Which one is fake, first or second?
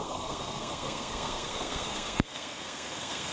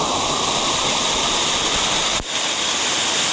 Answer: first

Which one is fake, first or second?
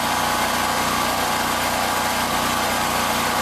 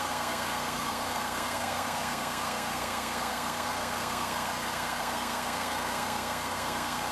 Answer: second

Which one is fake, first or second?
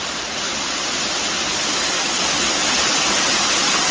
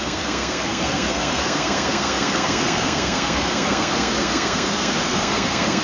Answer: second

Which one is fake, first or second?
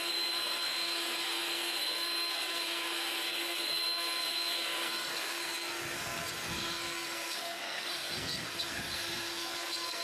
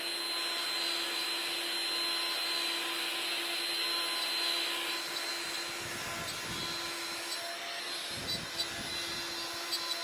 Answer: first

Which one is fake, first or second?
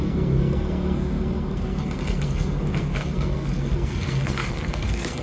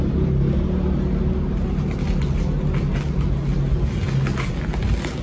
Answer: first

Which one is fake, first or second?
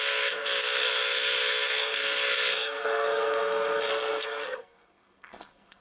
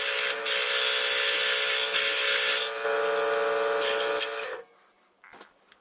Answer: first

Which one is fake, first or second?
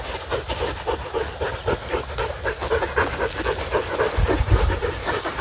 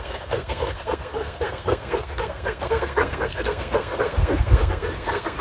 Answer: second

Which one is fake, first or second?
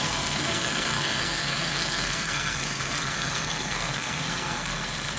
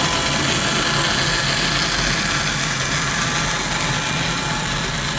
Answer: first